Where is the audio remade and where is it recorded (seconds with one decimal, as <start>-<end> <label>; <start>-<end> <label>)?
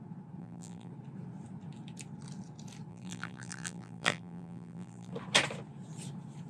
0.0-0.4 recorded; 0.4-0.9 remade; 0.9-2.9 recorded; 2.9-5.1 remade; 5.1-6.5 recorded